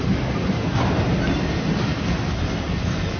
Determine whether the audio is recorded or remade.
recorded